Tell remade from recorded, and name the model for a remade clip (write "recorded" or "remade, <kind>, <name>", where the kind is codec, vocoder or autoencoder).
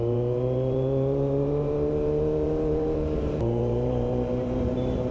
remade, vocoder, BigVGAN v2